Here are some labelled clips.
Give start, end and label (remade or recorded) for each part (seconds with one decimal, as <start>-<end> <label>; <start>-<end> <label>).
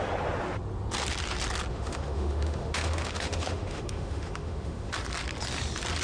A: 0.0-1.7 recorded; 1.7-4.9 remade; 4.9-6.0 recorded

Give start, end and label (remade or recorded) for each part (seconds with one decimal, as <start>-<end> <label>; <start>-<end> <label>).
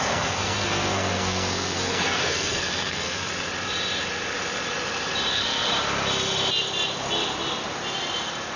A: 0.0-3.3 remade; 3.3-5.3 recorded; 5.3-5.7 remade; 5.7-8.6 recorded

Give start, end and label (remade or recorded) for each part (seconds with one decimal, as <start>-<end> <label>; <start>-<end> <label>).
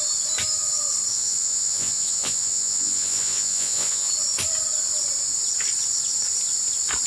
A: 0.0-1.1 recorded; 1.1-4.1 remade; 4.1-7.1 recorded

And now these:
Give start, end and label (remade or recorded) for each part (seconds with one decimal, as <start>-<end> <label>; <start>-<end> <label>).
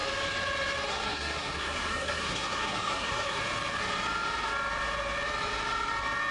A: 0.0-0.9 recorded; 0.9-3.4 remade; 3.4-6.3 recorded